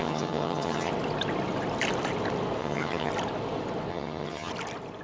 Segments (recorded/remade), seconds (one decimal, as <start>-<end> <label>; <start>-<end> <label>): 0.0-0.9 remade; 0.9-2.6 recorded; 2.6-3.1 remade; 3.1-3.9 recorded; 3.9-4.5 remade; 4.5-5.0 recorded